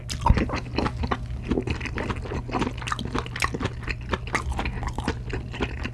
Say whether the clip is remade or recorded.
recorded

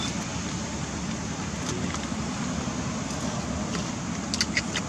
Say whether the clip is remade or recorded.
recorded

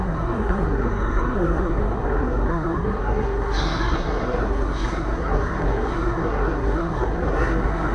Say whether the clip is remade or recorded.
remade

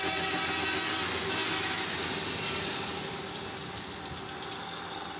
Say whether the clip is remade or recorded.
recorded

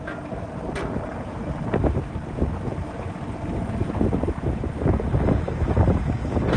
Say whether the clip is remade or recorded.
recorded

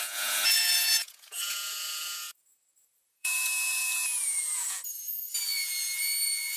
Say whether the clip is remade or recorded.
remade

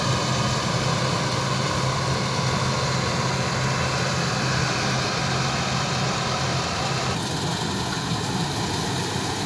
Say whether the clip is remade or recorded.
recorded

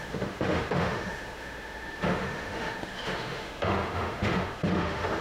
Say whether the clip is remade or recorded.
remade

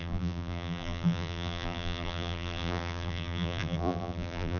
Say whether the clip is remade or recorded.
remade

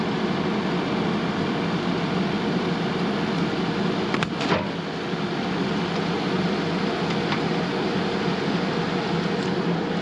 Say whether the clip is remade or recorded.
recorded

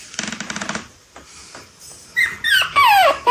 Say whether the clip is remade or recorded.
remade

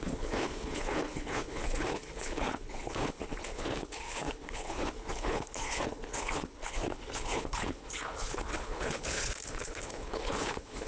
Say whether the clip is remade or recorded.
remade